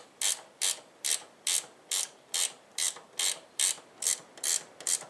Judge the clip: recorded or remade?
recorded